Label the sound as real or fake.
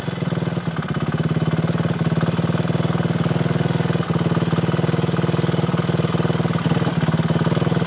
real